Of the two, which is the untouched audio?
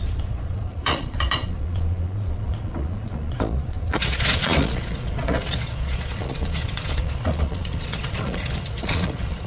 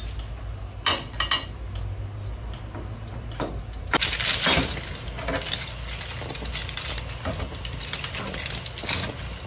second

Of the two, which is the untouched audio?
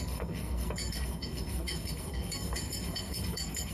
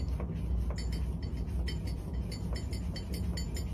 second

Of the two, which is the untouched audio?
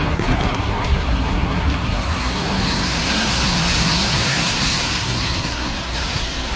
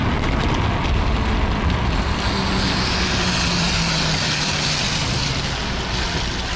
second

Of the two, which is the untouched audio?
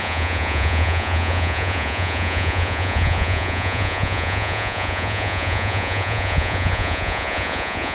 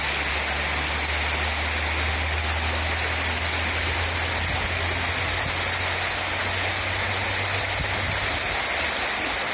second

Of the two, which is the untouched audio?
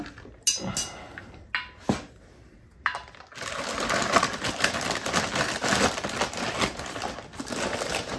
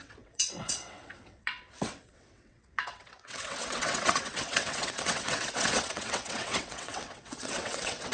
first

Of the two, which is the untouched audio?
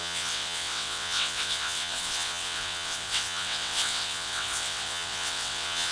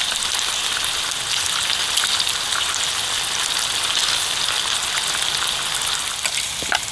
second